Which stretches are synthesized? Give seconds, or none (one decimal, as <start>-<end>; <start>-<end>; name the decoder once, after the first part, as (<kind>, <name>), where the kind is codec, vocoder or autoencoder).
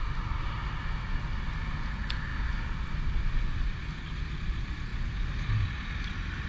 none